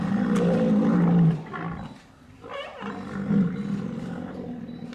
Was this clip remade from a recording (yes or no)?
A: no